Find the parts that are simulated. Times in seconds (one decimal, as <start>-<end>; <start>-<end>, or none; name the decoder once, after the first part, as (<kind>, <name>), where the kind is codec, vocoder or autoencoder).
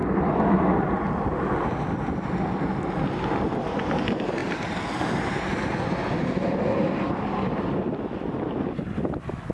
none